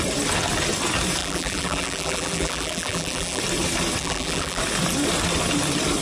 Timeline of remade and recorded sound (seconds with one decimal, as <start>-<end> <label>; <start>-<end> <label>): 0.0-1.2 recorded; 1.2-3.4 remade; 3.4-4.0 recorded; 4.0-4.6 remade; 4.6-6.0 recorded